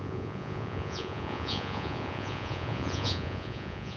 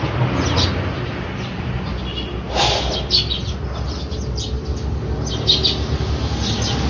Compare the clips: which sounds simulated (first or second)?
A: first